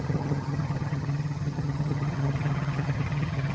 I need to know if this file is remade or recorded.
remade